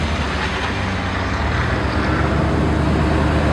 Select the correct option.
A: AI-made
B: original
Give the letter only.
B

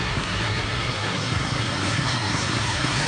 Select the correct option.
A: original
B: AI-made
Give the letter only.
B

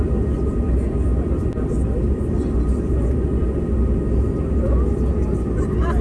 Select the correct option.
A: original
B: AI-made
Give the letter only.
A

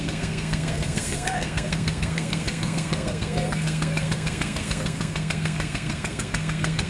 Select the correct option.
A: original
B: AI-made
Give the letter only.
B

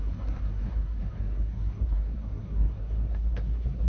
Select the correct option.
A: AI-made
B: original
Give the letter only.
A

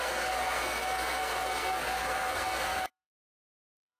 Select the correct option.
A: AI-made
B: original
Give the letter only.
A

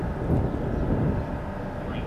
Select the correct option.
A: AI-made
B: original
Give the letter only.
B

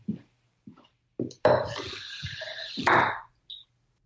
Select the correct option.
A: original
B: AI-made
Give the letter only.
A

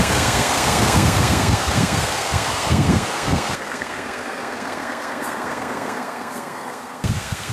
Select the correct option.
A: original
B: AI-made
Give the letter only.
B